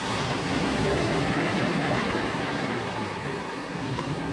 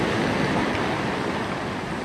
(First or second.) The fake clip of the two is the first